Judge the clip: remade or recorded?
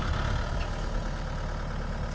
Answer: recorded